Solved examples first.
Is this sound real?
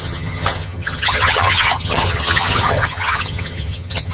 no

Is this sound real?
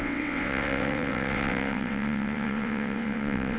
no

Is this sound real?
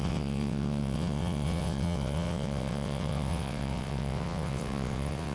no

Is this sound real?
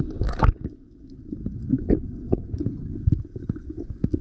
no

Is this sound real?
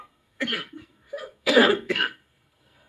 no